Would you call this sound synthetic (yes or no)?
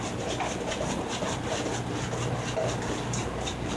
no